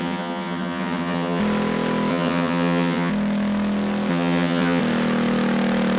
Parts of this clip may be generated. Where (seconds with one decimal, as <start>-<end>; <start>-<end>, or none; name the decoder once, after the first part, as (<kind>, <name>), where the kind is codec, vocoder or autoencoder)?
0.0-1.4 (vocoder, HiFi-GAN); 2.1-3.1; 4.1-4.8